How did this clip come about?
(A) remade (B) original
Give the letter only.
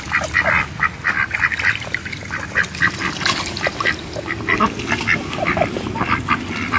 B